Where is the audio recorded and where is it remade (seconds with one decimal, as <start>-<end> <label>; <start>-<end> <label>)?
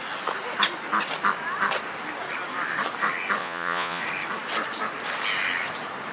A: 0.0-3.4 recorded; 3.4-4.0 remade; 4.0-6.1 recorded